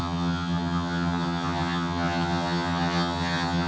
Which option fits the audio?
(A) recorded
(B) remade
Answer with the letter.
B